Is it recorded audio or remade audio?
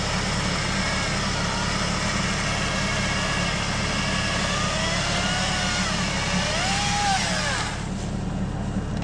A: recorded